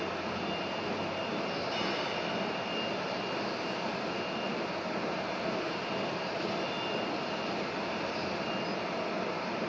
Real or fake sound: real